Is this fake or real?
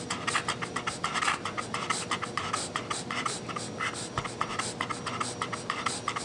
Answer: real